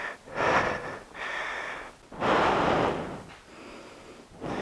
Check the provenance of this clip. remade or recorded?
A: recorded